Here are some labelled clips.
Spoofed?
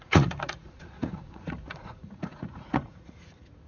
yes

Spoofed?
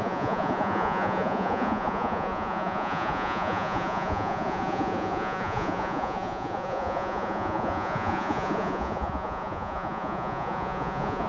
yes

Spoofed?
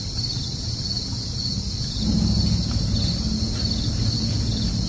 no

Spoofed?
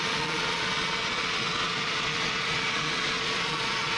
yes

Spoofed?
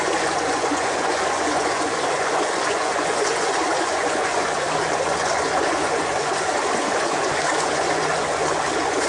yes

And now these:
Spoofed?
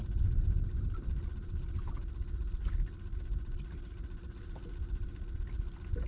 no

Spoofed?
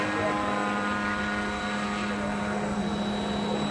no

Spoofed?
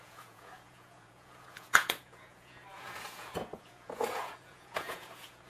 yes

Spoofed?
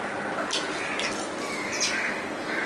no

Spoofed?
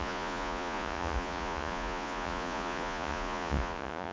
yes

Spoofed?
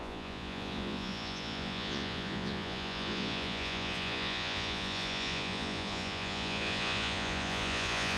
yes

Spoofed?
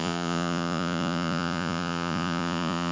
yes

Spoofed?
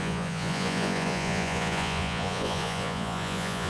yes